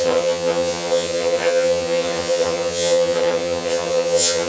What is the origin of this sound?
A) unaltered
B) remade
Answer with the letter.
B